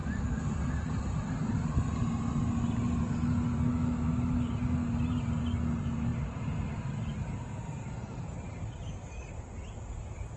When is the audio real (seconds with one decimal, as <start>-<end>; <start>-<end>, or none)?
0.0-3.7; 4.5-10.4